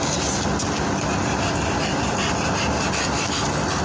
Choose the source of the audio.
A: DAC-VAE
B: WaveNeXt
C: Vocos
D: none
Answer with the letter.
D